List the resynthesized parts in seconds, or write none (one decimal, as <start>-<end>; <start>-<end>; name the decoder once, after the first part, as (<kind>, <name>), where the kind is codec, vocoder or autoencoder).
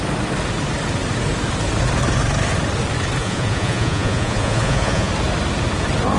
3.2-5.1 (vocoder, Vocos)